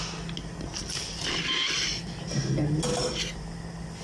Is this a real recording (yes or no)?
yes